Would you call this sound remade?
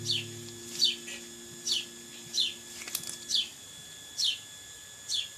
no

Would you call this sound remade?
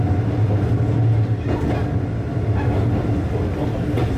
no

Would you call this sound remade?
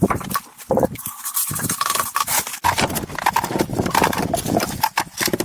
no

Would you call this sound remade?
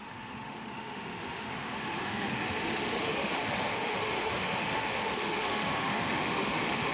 yes